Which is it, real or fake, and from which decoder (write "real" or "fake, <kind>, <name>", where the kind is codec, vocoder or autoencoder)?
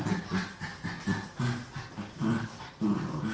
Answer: real